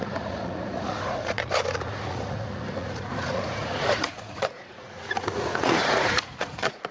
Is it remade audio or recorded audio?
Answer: remade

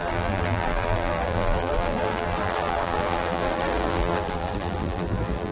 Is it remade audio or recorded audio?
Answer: remade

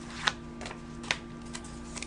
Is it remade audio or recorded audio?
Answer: recorded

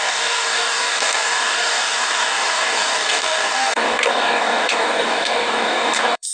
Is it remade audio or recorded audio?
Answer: remade